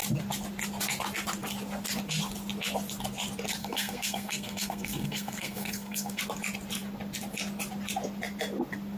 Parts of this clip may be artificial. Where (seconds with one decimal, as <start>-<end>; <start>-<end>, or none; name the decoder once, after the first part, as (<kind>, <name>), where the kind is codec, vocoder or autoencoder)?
3.6-6.2 (codec, SNAC)